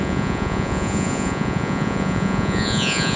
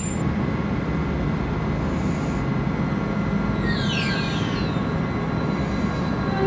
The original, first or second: second